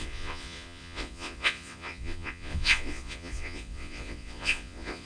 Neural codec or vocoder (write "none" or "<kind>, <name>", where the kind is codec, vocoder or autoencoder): vocoder, Vocos